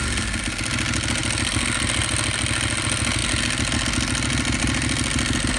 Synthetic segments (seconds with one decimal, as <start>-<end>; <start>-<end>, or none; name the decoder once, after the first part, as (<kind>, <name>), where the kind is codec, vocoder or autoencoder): none